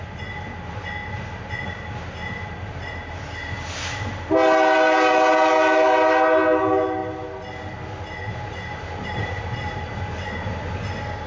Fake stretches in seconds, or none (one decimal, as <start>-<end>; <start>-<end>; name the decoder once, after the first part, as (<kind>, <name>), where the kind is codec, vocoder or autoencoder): 9.0-9.8 (vocoder, BigVGAN v2)